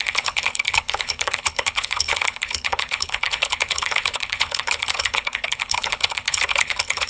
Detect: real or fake fake